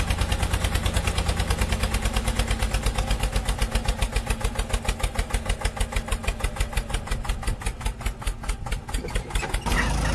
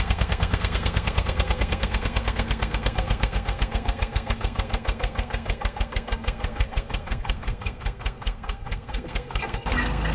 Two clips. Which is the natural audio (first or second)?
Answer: first